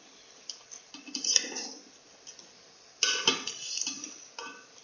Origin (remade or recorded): recorded